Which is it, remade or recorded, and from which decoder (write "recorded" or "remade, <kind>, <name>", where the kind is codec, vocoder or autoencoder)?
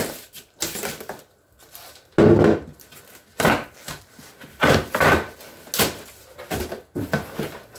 recorded